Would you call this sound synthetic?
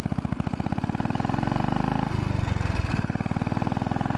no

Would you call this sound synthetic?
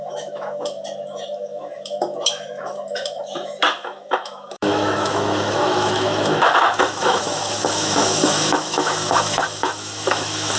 yes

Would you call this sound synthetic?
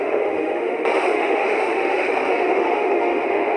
yes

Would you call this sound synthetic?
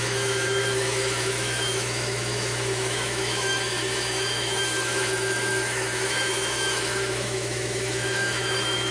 yes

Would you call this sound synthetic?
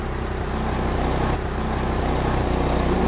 no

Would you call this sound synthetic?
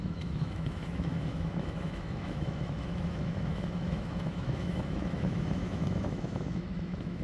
yes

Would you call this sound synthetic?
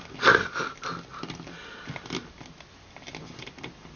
no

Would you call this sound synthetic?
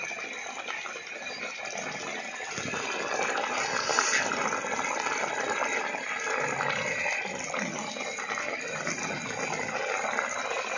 no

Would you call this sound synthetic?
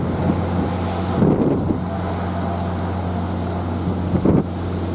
no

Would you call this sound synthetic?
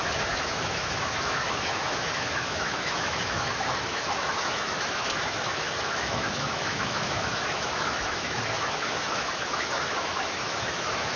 yes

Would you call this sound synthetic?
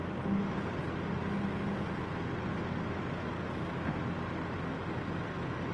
no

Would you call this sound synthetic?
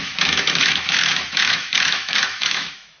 yes